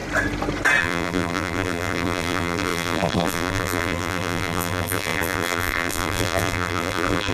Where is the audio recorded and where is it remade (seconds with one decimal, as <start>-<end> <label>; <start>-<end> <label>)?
0.0-0.8 recorded; 0.8-7.3 remade